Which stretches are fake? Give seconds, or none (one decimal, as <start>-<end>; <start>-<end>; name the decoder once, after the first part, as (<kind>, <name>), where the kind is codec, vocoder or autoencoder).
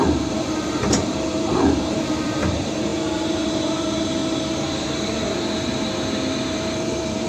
0.0-4.2 (vocoder, BigVGAN v2); 4.8-7.3